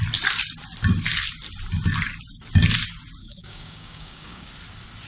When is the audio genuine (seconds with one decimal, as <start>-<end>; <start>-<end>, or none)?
0.0-3.2; 4.5-5.1